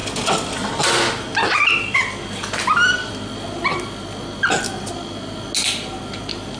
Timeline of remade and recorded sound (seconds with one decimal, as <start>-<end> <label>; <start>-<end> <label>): 0.0-6.6 recorded